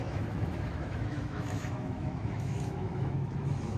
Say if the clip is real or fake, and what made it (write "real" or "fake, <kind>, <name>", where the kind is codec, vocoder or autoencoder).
fake, autoencoder, DAC-VAE